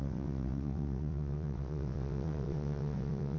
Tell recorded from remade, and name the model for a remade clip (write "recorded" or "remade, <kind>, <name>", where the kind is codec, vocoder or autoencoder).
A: remade, vocoder, WaveNeXt